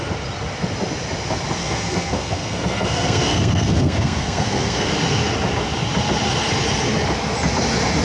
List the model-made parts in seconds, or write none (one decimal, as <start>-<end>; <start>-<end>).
1.6-4.9

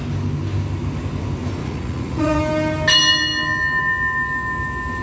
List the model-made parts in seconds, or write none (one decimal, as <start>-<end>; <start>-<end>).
1.6-2.4

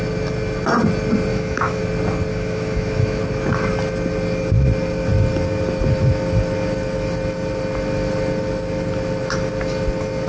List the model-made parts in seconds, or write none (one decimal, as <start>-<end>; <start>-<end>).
1.3-1.8; 2.3-3.2

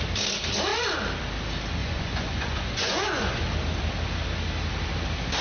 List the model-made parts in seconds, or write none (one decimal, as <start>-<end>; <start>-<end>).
1.8-3.4